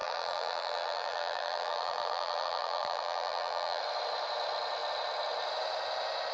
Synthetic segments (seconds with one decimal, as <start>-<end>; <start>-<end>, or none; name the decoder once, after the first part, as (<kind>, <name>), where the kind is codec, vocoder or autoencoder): 0.0-3.8 (vocoder, BigVGAN v2)